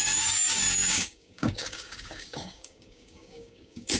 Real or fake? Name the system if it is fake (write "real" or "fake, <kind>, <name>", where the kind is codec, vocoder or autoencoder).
fake, codec, DAC